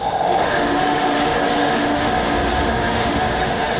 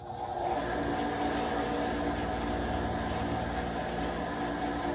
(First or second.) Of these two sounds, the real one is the second